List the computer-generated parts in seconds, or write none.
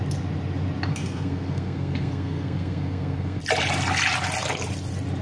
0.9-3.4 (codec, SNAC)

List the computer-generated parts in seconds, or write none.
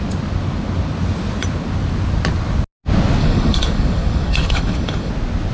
3.2-5.1 (codec, DAC)